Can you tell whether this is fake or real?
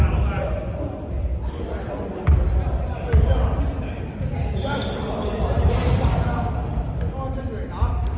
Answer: real